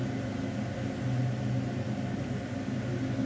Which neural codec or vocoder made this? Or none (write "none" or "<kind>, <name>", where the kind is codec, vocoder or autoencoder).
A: none